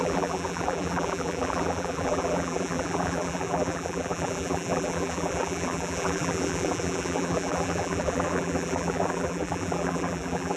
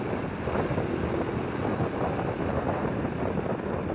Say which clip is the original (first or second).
second